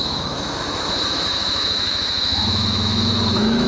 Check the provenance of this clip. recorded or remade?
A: remade